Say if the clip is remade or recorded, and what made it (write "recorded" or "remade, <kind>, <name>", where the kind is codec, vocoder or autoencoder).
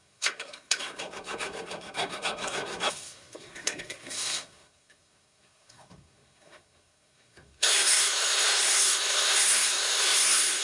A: remade, codec, SNAC